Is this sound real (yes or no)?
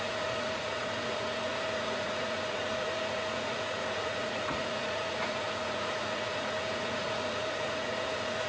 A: no